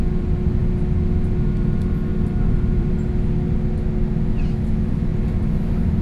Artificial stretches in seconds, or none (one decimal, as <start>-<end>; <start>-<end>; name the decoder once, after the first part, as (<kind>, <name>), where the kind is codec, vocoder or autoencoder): 2.1-2.9 (vocoder, BigVGAN v2); 5.1-6.0